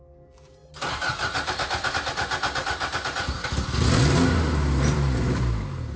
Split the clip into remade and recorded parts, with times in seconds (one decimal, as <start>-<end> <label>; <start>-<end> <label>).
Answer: 0.0-6.0 recorded